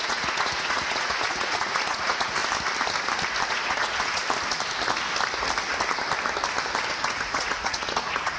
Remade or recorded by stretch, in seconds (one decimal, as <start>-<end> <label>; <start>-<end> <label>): 0.0-2.4 remade; 2.4-3.5 recorded; 3.5-4.2 remade; 4.2-7.0 recorded; 7.0-8.4 remade